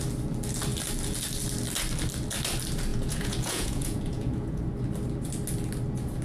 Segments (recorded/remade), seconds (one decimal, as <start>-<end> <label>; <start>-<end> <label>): 0.0-2.9 recorded; 2.9-4.6 remade; 4.6-6.2 recorded